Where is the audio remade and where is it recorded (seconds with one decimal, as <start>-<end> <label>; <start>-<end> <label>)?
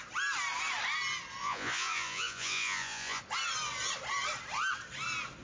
0.0-1.4 recorded; 1.4-3.2 remade; 3.2-5.4 recorded